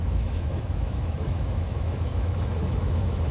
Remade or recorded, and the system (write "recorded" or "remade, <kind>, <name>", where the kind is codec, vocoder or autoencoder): remade, autoencoder, DAC-VAE